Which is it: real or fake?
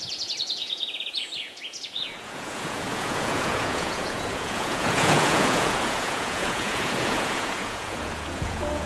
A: fake